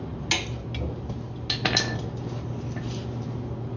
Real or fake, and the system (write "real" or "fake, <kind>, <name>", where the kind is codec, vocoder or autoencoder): real